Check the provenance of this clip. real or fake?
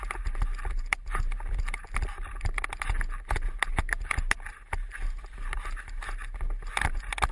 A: real